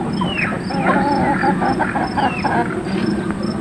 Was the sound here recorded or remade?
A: remade